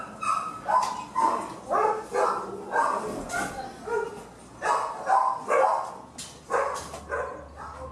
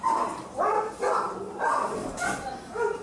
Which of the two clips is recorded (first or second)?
first